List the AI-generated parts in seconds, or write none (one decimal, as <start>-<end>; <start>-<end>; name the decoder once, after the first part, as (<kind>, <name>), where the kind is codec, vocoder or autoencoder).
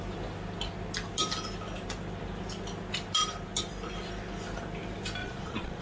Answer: 5.2-5.8 (vocoder, Vocos)